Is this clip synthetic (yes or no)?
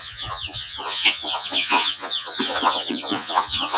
yes